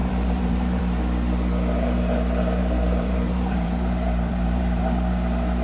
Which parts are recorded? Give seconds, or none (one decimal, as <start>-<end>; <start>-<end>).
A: 0.8-2.6; 4.8-5.6